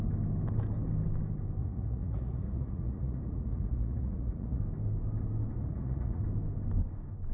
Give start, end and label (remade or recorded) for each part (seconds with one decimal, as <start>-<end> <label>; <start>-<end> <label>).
0.0-1.6 recorded; 1.6-4.6 remade; 4.6-5.6 recorded; 5.6-6.2 remade; 6.2-7.3 recorded